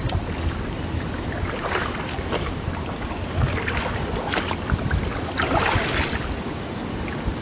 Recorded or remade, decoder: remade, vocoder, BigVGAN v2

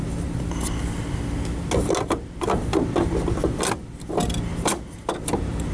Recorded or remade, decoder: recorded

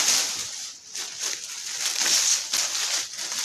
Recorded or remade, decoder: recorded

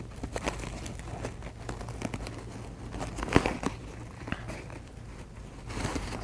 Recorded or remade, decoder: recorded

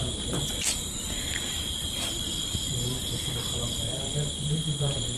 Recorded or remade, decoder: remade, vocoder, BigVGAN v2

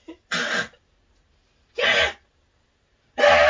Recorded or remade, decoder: recorded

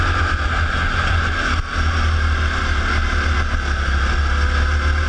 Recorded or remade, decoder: recorded